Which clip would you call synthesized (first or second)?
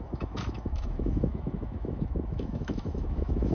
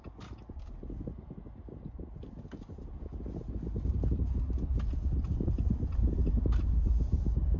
first